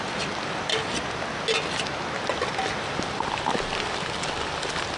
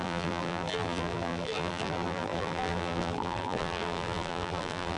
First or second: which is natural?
first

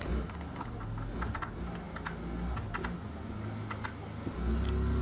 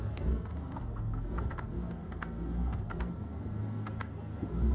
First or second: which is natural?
first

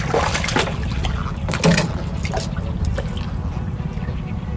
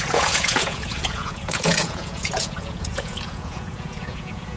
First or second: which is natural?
first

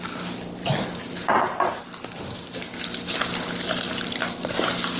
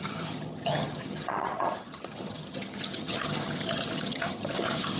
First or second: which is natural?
first